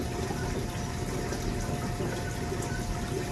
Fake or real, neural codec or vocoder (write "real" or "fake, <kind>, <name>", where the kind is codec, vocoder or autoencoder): real